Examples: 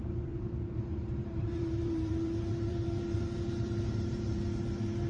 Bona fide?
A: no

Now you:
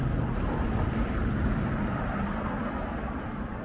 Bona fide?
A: yes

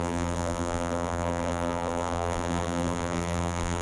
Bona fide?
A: no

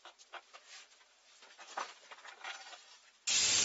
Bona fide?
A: yes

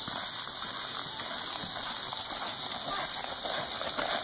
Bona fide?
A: yes